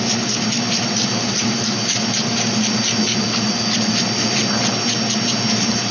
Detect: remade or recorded recorded